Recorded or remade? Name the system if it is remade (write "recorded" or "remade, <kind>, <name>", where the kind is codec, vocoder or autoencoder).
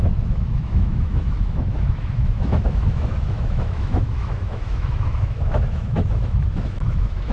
remade, autoencoder, DAC-VAE